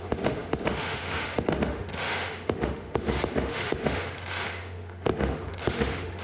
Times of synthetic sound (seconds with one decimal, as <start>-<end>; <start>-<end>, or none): 0.0-6.2